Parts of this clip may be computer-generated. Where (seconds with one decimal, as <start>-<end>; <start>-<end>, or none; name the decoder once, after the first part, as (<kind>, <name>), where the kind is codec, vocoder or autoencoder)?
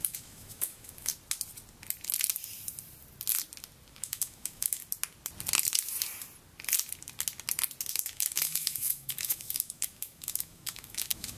0.0-1.1 (autoencoder, DAC-VAE); 3.9-4.8; 7.9-11.4